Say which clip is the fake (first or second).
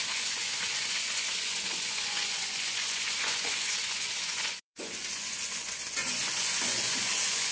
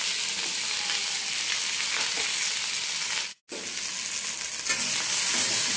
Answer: first